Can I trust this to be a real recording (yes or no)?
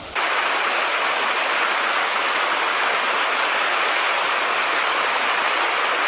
yes